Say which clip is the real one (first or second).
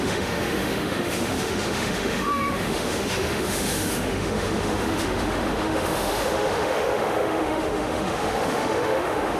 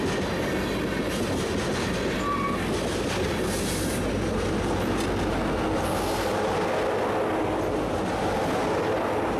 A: second